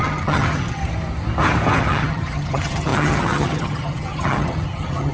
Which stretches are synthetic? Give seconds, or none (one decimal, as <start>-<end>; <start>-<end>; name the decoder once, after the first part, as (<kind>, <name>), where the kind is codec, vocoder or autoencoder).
0.0-0.8 (vocoder, HiFi-GAN); 1.8-5.1